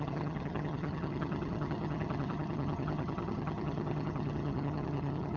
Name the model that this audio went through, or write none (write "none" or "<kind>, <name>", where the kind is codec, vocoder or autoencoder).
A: vocoder, HiFi-GAN